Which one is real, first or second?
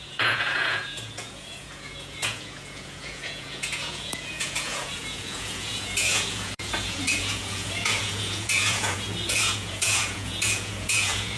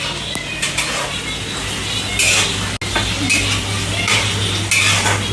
second